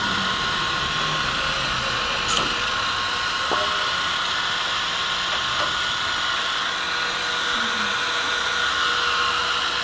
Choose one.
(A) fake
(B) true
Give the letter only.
B